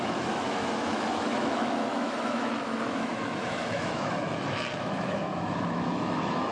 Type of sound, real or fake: fake